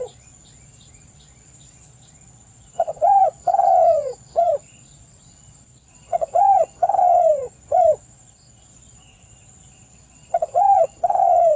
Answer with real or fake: fake